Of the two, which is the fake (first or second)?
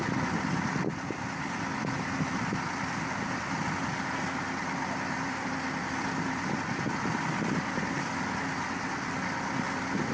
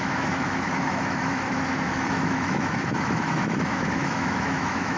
second